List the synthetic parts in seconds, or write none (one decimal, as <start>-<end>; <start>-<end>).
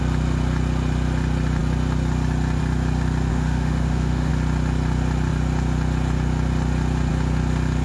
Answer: 3.3-4.3